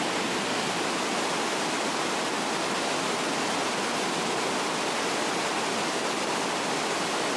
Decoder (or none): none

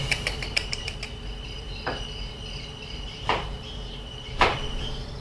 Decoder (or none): vocoder, BigVGAN v2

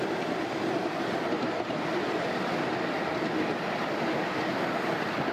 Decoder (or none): none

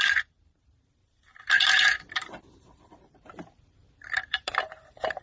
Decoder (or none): vocoder, BigVGAN v2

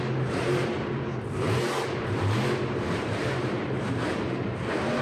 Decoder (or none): vocoder, BigVGAN v2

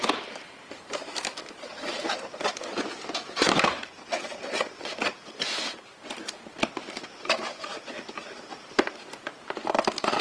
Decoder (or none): vocoder, BigVGAN v2